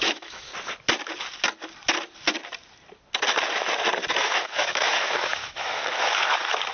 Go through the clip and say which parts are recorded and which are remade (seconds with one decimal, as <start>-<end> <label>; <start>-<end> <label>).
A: 0.0-0.5 remade; 0.5-4.1 recorded; 4.1-6.7 remade